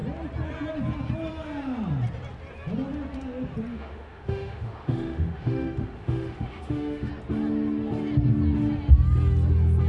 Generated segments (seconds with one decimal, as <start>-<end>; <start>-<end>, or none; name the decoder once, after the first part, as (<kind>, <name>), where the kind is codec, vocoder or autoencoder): 3.7-7.1 (autoencoder, DAC-VAE)